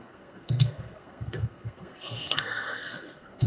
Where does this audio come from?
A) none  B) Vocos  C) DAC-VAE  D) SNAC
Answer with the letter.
D